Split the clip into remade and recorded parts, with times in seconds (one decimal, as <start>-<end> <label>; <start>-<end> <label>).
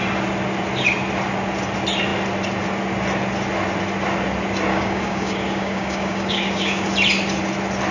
0.0-4.7 recorded; 4.7-6.9 remade; 6.9-7.9 recorded